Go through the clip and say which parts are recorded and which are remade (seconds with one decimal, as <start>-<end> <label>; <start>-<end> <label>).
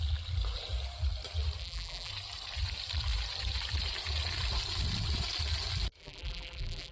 0.0-1.6 recorded; 1.6-2.1 remade; 2.1-6.0 recorded; 6.0-6.9 remade